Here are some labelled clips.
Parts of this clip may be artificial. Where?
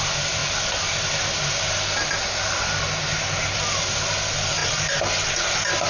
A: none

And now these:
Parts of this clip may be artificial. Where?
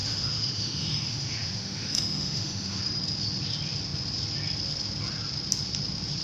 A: 0.0-2.8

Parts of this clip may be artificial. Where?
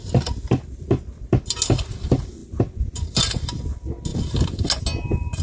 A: none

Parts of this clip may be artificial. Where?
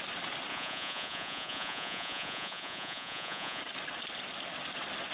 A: 0.5-3.6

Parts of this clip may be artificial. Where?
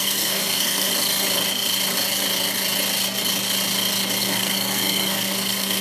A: 0.0-0.9; 4.2-5.8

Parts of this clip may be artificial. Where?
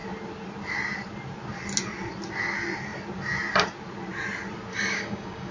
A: 4.7-5.5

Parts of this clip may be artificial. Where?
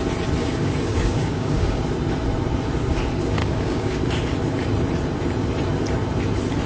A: 0.4-1.8; 3.4-4.0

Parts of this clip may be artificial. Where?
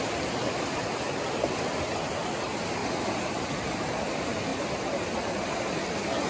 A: none